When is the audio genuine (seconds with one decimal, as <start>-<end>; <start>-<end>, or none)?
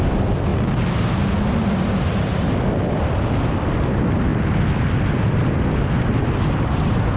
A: 0.5-1.5; 2.3-3.5; 4.3-6.2